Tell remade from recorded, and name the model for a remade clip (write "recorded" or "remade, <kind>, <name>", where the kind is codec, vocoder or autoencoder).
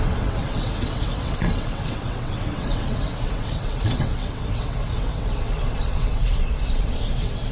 remade, vocoder, WaveNeXt